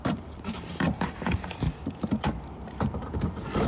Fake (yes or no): yes